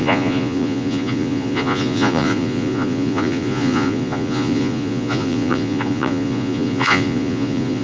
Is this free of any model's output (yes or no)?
no